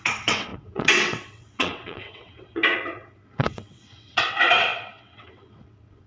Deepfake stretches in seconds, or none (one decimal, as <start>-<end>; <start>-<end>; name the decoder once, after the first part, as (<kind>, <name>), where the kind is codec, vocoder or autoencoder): 0.0-6.1 (vocoder, WaveNeXt)